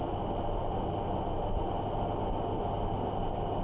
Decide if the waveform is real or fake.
real